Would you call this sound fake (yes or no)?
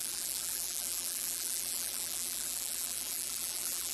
yes